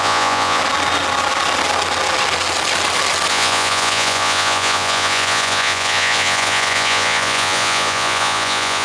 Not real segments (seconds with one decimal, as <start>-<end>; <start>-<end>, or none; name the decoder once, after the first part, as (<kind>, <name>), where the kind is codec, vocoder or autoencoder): 0.0-0.6 (vocoder, Vocos); 3.3-8.8